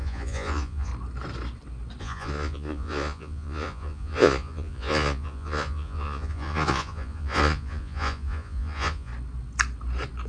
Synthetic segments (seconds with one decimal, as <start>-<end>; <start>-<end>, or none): 0.0-0.9; 2.0-9.1